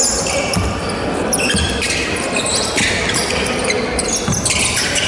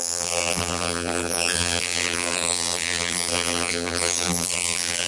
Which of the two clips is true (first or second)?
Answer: first